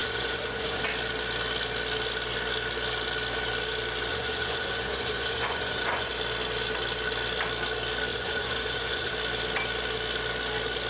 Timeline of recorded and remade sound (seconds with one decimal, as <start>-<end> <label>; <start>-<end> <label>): 0.0-0.8 remade; 0.8-4.1 recorded; 4.1-6.1 remade; 6.1-8.1 recorded; 8.1-9.1 remade; 9.1-10.9 recorded